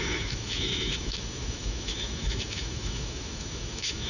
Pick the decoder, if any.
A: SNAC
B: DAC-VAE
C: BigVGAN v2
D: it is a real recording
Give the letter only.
B